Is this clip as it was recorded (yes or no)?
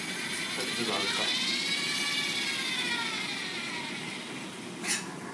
yes